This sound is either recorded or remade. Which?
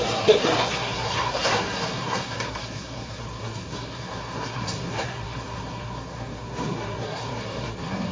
remade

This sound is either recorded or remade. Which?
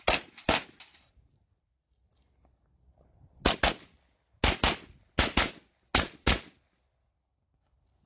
recorded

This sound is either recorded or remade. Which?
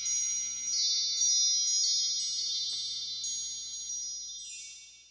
recorded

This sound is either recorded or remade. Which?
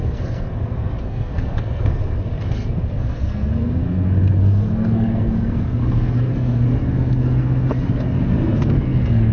remade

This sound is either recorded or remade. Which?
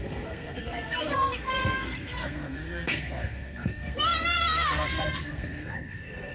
remade